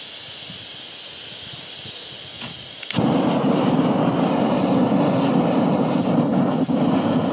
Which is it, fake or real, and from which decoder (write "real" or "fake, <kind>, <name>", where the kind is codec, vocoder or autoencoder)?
real